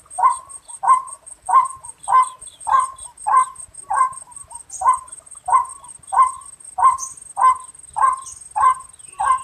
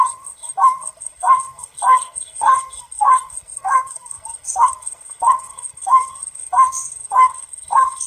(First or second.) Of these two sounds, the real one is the first